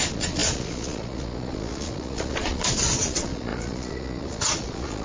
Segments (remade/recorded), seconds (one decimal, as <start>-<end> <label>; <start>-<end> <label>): 0.0-5.0 remade